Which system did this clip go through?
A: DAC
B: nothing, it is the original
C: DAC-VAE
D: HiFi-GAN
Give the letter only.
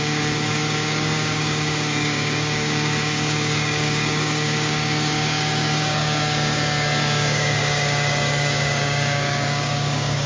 A